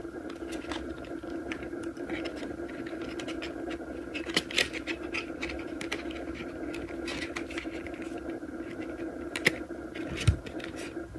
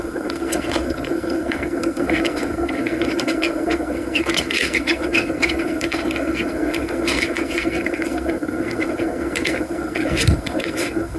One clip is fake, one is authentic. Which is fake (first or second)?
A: second